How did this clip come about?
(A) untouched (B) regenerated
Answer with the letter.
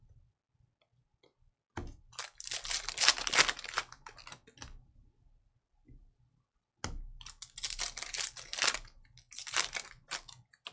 A